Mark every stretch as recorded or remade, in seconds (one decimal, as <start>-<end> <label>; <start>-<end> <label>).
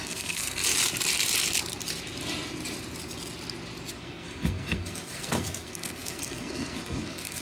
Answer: 0.0-0.6 remade; 0.6-3.9 recorded; 3.9-7.4 remade